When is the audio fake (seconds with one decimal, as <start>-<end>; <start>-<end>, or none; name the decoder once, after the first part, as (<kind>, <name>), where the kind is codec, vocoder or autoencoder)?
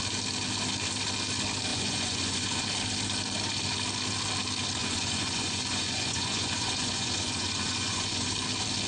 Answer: 1.7-2.6 (vocoder, Vocos); 4.8-8.3